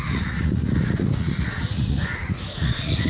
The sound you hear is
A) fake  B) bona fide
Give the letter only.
A